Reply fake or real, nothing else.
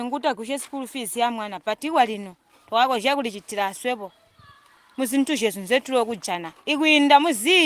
real